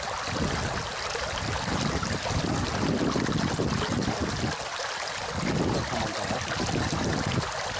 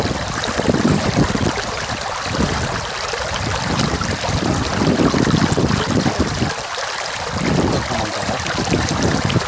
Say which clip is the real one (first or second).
first